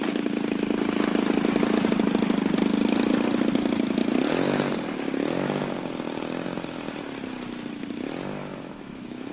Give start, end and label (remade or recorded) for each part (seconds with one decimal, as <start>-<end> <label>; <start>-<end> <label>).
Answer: 0.0-8.4 recorded; 8.4-9.3 remade